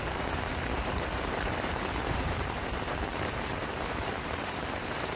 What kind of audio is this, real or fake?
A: fake